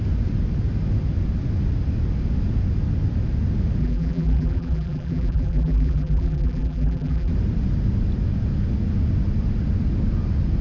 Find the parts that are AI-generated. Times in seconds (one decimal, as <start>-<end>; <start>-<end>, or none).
3.8-7.3